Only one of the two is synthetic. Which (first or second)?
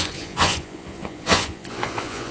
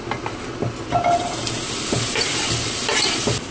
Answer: first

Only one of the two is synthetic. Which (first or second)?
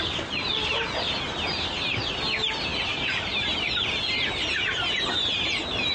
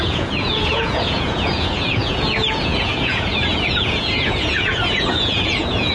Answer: second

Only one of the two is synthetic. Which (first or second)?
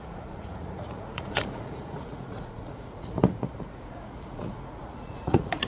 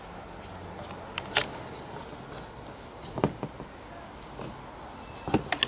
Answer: first